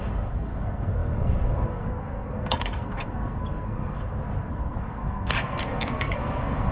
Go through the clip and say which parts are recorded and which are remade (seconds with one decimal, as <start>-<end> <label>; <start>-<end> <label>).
0.0-6.7 remade